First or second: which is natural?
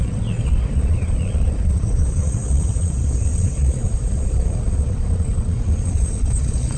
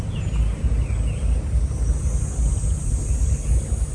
second